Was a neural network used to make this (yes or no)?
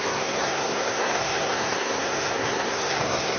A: yes